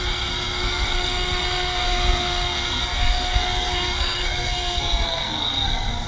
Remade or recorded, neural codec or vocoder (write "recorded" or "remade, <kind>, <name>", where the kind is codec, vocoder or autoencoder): remade, codec, SNAC